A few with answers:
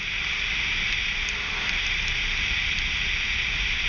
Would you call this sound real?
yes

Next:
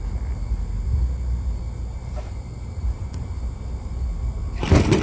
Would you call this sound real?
yes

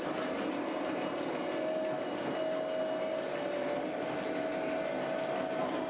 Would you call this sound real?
yes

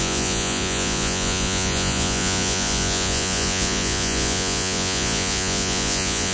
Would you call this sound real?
no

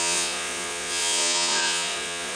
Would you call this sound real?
no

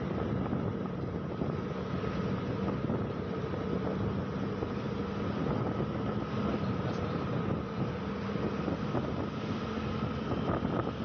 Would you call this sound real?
yes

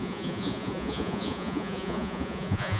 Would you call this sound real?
no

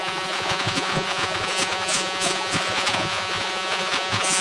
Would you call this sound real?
no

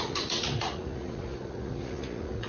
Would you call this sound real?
no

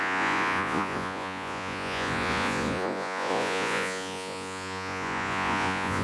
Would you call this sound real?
no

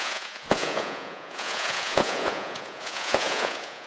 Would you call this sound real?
no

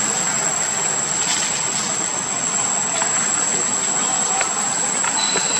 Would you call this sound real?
yes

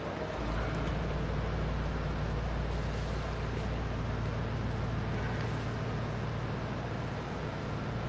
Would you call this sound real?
yes